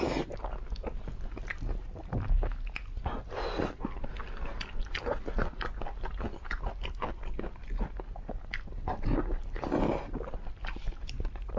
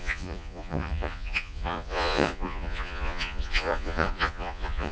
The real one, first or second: first